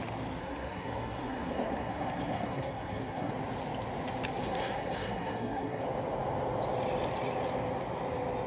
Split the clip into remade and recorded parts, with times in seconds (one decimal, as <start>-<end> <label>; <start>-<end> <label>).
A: 0.0-0.4 recorded; 0.4-3.3 remade; 3.3-4.4 recorded; 4.4-5.8 remade; 5.8-8.5 recorded